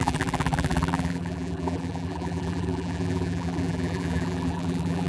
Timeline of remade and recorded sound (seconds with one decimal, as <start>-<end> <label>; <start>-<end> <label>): 0.0-5.1 remade

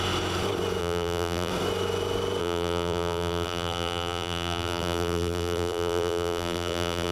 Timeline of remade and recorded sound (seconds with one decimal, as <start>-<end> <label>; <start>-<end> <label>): 0.0-0.8 recorded; 0.8-1.5 remade; 1.5-2.4 recorded; 2.4-7.1 remade

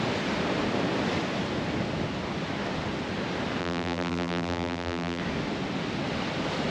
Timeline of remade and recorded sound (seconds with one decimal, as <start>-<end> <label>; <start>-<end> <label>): 0.0-3.6 recorded; 3.6-5.2 remade; 5.2-6.7 recorded

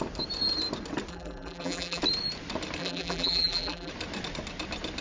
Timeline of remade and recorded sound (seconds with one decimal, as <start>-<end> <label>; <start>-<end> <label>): 0.0-1.1 recorded; 1.1-2.0 remade; 2.0-2.8 recorded; 2.8-3.9 remade; 3.9-5.0 recorded

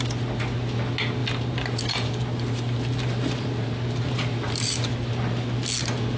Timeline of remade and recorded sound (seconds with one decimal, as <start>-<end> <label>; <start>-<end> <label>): 0.0-1.2 recorded; 1.2-4.9 remade; 4.9-6.2 recorded

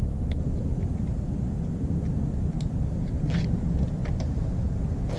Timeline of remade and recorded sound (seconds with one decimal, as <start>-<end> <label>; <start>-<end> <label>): 0.0-5.2 recorded

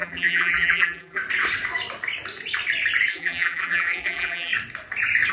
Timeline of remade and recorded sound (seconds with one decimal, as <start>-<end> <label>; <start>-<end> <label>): 0.0-1.2 remade; 1.2-3.1 recorded; 3.1-4.5 remade; 4.5-5.3 recorded